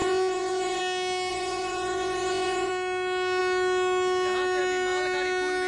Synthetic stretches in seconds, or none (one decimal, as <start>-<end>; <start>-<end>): 0.0-0.8; 1.3-2.7